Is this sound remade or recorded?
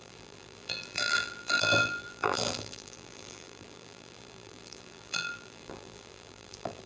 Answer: remade